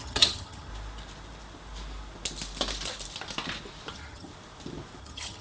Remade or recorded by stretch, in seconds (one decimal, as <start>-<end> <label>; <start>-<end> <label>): 0.0-0.7 remade; 0.7-3.9 recorded; 3.9-4.3 remade; 4.3-5.0 recorded; 5.0-5.4 remade